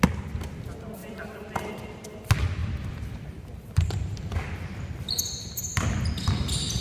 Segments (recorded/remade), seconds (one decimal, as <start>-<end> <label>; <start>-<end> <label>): 0.0-1.0 recorded; 1.0-1.7 remade; 1.7-2.6 recorded; 2.6-4.5 remade; 4.5-6.8 recorded